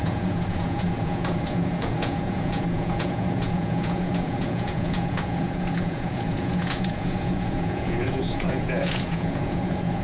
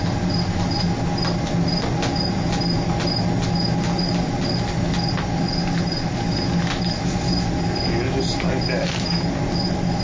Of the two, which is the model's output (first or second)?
first